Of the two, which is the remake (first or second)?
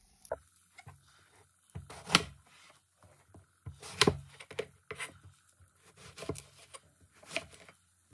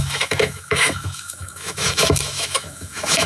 second